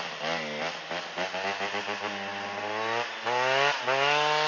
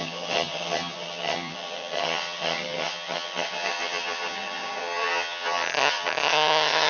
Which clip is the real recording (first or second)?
first